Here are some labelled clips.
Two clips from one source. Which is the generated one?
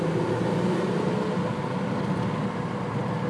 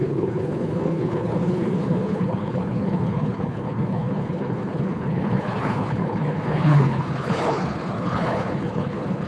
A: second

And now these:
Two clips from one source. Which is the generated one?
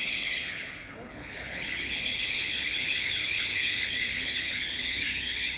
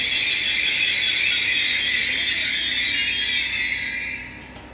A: first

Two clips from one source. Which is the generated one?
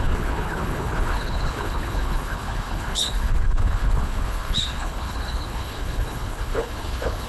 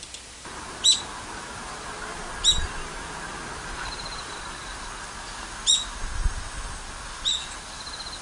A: first